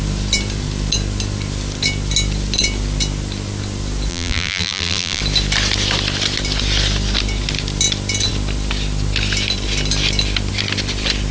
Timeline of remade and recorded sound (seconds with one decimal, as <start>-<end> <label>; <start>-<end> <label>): 0.0-4.1 recorded; 4.1-5.2 remade; 5.2-11.3 recorded